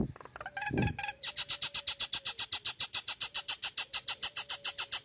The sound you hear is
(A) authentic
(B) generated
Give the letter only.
A